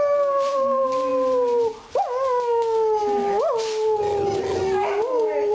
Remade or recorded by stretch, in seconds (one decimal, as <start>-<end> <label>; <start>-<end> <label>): 0.0-5.5 recorded